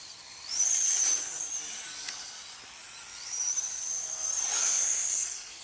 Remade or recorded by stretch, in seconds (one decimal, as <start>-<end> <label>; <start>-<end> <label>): 0.0-4.6 recorded; 4.6-5.6 remade